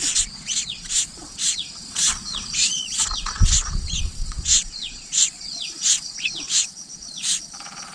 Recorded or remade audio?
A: remade